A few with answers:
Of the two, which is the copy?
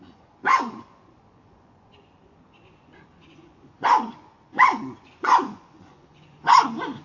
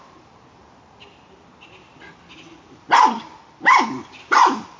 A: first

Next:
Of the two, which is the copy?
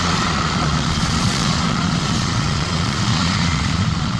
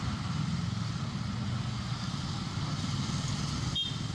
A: first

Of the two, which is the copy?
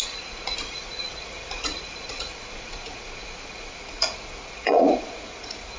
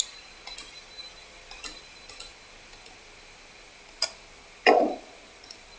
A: first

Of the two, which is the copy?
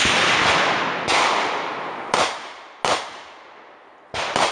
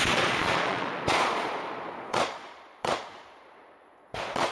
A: second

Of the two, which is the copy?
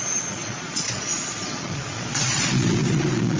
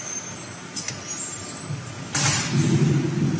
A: first